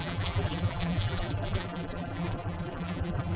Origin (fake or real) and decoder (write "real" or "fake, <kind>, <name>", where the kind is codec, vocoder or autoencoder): fake, vocoder, BigVGAN v2